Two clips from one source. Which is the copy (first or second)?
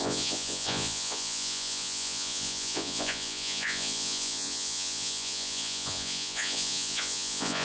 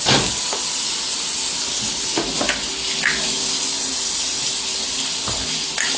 first